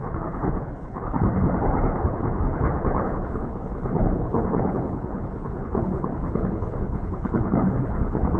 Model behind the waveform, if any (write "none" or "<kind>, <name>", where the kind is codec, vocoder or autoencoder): codec, HILCodec